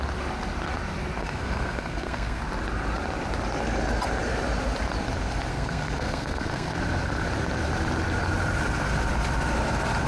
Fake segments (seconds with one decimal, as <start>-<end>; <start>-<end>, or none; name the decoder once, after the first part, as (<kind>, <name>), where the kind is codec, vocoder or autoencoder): 1.2-2.4 (codec, SNAC); 5.5-6.8